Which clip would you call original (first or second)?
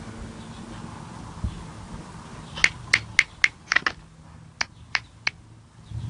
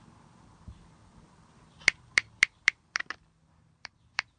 first